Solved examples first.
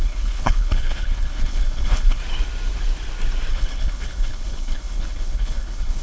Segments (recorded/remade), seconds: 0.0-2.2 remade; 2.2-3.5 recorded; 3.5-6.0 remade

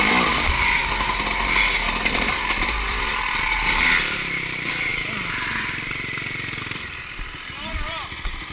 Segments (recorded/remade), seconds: 0.0-0.8 remade; 0.8-2.9 recorded; 2.9-4.9 remade; 4.9-6.6 recorded; 6.6-8.5 remade